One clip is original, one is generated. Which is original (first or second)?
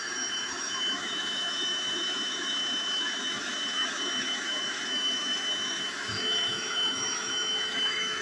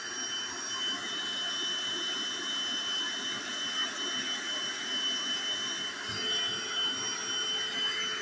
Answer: second